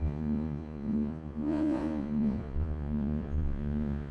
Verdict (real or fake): fake